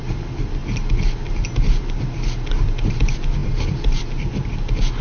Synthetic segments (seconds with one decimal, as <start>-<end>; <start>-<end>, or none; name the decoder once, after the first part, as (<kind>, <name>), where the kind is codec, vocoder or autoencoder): none